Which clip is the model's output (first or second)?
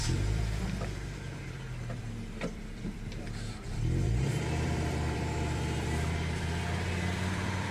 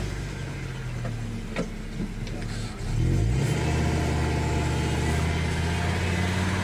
first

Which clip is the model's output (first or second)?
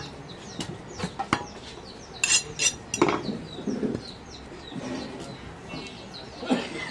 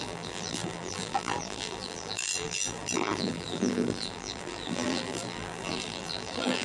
second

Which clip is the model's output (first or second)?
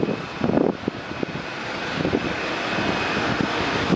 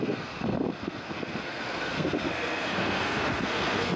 second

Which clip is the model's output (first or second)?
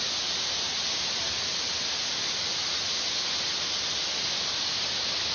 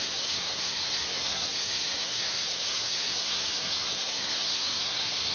second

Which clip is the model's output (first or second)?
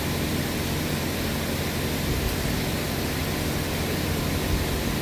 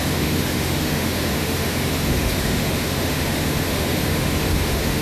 second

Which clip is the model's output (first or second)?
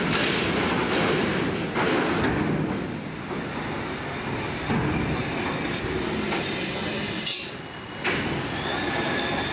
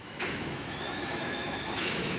second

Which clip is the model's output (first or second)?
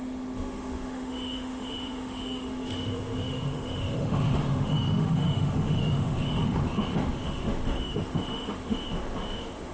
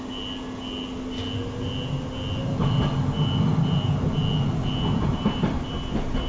first